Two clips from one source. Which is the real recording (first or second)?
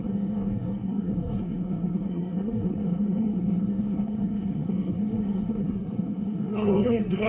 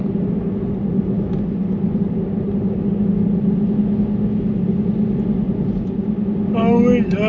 second